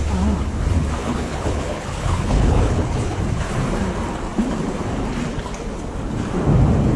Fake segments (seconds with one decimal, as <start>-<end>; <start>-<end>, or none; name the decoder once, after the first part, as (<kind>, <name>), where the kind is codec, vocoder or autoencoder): 1.0-3.2 (codec, HILCodec)